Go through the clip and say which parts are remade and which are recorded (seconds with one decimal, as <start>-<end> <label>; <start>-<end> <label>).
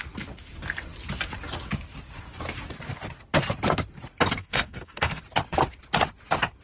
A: 0.0-4.4 recorded; 4.4-5.2 remade; 5.2-6.6 recorded